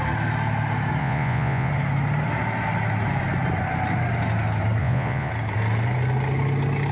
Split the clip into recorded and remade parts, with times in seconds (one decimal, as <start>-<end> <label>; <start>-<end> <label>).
0.0-1.0 recorded; 1.0-1.7 remade; 1.7-4.8 recorded; 4.8-5.3 remade; 5.3-6.9 recorded